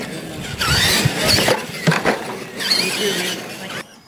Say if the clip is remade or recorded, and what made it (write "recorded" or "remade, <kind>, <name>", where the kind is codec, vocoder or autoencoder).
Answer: recorded